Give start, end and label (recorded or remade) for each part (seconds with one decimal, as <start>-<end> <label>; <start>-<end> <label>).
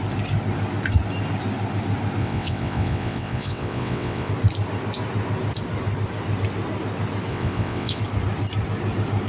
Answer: 0.0-2.2 recorded; 2.2-4.3 remade; 4.3-7.3 recorded; 7.3-8.0 remade; 8.0-9.3 recorded